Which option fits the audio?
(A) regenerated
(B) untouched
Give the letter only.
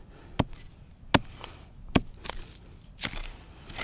B